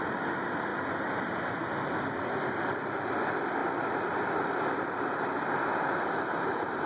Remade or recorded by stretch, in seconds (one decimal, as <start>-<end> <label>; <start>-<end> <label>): 0.0-0.7 remade; 0.7-2.1 recorded; 2.1-6.9 remade